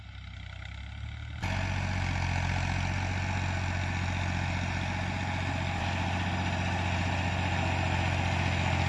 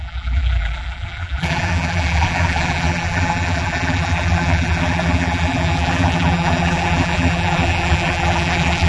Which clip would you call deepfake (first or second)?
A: second